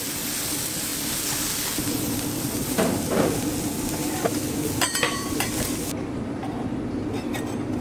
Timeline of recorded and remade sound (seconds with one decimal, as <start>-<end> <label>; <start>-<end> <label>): 0.0-6.4 remade; 6.4-7.2 recorded; 7.2-7.8 remade